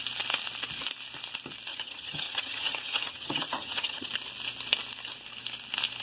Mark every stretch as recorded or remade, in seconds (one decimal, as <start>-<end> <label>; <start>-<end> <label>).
0.0-1.7 recorded; 1.7-4.1 remade; 4.1-6.0 recorded